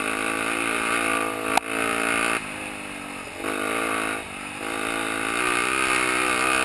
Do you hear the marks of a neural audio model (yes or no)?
no